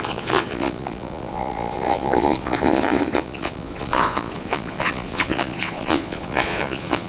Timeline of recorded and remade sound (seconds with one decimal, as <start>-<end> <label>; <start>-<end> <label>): 0.0-7.1 remade